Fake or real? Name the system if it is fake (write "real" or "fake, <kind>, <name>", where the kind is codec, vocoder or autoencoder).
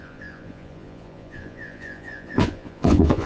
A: fake, vocoder, Vocos